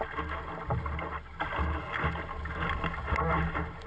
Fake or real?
real